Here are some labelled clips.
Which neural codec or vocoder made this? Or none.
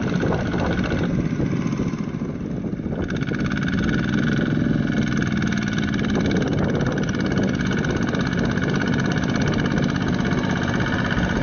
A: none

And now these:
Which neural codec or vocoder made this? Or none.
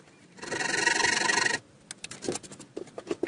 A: none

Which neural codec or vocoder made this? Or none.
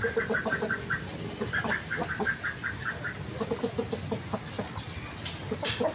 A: none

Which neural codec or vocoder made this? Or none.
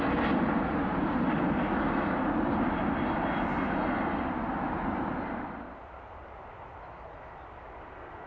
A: none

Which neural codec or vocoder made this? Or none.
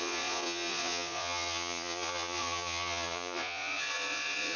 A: vocoder, Vocos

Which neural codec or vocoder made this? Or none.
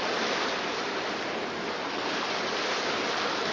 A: none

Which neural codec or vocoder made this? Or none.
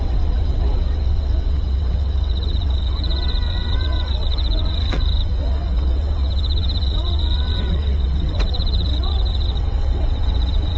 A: vocoder, WaveNeXt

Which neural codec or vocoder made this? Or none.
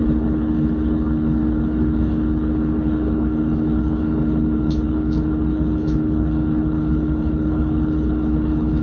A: codec, HILCodec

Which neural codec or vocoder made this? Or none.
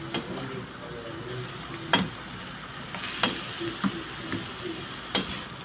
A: none